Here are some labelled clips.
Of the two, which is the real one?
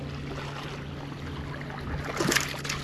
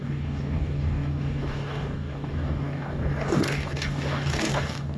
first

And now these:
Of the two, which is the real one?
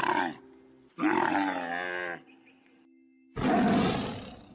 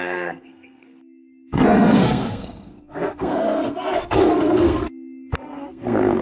first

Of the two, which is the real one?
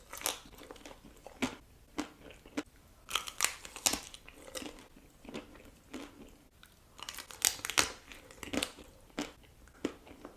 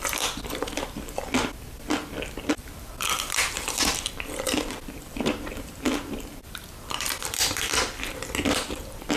first